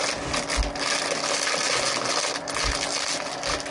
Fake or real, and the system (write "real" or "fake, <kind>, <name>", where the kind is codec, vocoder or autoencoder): real